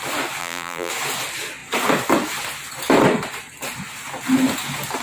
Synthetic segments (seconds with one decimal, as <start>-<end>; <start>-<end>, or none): 0.4-0.9